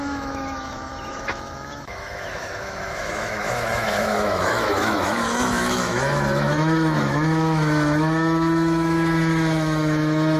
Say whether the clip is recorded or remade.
remade